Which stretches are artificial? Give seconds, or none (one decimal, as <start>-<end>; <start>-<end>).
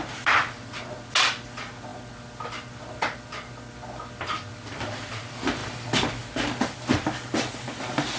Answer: none